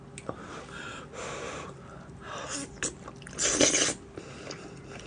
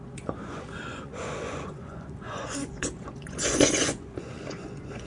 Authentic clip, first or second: first